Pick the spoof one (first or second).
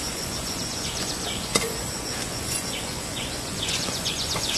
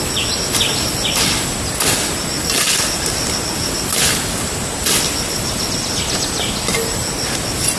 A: first